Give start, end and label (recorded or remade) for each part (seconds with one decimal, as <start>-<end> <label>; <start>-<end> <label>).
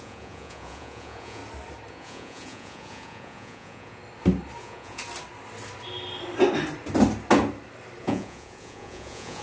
0.0-1.4 remade; 1.4-1.9 recorded; 1.9-4.0 remade; 4.0-4.6 recorded; 4.6-5.0 remade; 5.0-8.0 recorded; 8.0-9.4 remade